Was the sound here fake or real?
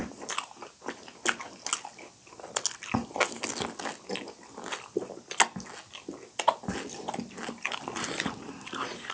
real